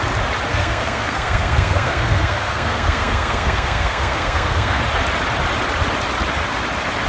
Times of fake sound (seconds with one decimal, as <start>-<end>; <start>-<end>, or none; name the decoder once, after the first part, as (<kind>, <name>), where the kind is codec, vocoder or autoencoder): 0.5-4.8 (codec, SNAC)